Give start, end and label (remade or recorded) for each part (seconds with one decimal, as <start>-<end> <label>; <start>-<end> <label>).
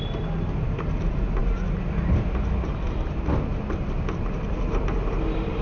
0.0-5.6 recorded